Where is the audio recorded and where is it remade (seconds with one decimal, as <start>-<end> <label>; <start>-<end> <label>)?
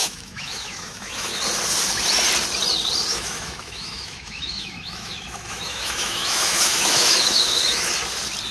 0.0-1.4 remade; 1.4-3.1 recorded; 3.1-7.9 remade; 7.9-8.5 recorded